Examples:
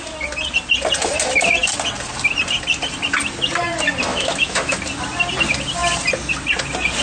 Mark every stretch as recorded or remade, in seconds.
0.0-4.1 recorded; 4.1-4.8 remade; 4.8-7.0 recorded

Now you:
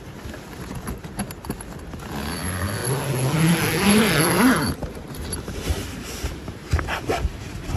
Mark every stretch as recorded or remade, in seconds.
0.0-7.8 recorded

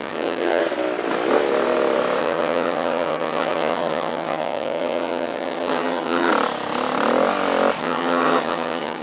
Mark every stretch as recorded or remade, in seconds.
0.0-0.6 remade; 0.6-2.2 recorded; 2.2-6.3 remade; 6.3-7.8 recorded; 7.8-9.0 remade